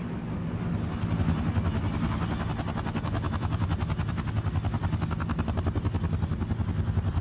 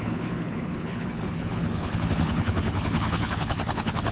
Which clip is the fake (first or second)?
second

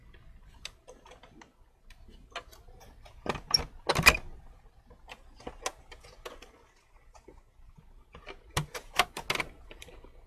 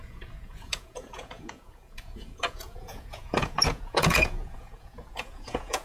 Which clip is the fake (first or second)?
second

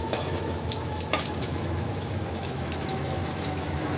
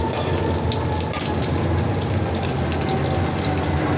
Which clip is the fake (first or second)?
first